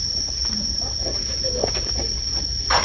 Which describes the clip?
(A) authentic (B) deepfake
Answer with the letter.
A